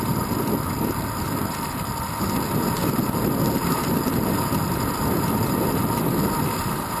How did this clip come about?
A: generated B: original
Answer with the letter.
B